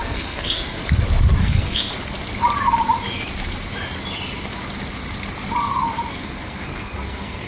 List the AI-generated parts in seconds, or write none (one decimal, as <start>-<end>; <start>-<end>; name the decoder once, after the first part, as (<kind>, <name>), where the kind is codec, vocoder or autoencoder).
0.0-0.8 (codec, SNAC); 1.4-1.9; 6.1-7.5

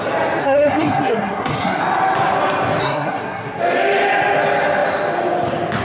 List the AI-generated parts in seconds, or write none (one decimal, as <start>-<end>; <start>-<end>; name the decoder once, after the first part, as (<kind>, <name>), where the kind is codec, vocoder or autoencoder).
0.4-1.8 (codec, SNAC); 2.8-3.6